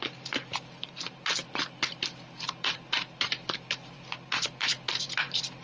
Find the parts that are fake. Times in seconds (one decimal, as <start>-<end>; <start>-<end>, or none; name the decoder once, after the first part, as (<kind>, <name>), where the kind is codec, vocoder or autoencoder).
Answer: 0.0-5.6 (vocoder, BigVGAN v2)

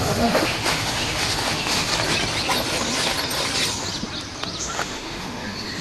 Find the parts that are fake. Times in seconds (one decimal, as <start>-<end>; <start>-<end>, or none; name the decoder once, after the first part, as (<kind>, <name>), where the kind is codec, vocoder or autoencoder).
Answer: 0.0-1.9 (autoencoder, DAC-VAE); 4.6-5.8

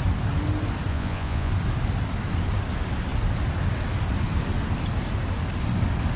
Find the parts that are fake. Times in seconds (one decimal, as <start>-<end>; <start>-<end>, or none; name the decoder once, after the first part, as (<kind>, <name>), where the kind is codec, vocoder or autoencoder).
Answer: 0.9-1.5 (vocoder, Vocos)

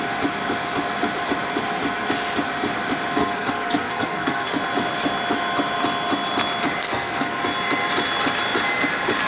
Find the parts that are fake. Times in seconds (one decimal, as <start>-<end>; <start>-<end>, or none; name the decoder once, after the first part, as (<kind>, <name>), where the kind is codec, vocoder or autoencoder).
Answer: 3.2-4.6 (codec, SNAC); 6.9-7.4

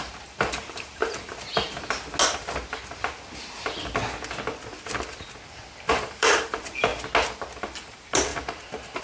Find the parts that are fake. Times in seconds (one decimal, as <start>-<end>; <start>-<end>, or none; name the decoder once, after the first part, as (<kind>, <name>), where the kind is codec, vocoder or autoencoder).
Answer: 0.0-1.3 (vocoder, BigVGAN v2); 5.9-6.9; 7.6-9.0